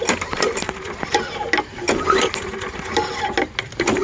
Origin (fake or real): real